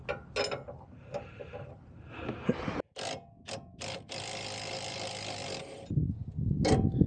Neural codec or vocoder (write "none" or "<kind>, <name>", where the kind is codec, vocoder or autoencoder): none